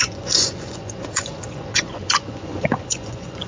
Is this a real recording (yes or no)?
no